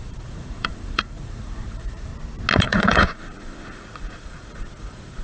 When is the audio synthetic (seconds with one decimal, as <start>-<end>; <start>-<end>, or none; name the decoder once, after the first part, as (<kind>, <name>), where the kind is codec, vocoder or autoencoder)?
0.0-2.1 (vocoder, Vocos); 2.6-5.2